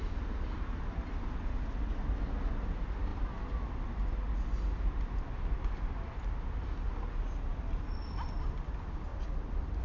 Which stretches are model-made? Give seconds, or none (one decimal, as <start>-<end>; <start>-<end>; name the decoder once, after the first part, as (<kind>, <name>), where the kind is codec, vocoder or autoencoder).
none

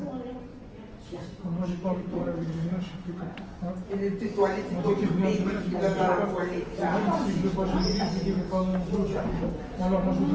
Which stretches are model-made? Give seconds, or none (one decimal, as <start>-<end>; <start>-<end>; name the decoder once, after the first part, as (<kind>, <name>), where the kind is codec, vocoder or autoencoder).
0.5-3.7 (vocoder, Vocos); 5.0-5.6

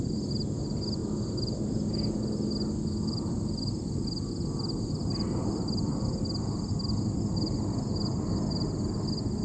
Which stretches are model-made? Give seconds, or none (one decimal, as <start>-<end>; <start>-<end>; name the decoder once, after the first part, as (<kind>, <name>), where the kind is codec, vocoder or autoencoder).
none

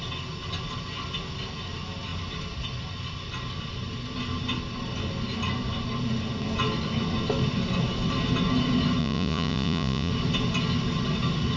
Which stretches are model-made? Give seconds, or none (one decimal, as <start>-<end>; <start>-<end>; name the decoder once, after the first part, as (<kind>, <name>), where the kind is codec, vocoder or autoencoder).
9.0-10.1 (vocoder, Vocos)

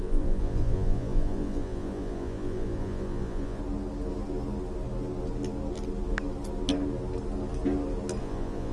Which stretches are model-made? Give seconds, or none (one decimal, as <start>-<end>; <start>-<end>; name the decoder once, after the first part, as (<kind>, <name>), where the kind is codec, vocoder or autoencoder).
0.0-3.6 (vocoder, Vocos); 8.2-8.7